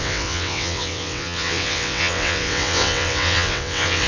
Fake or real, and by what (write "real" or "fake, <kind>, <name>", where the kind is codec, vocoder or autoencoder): fake, vocoder, WaveNeXt